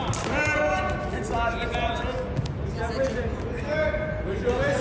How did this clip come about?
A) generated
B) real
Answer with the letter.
B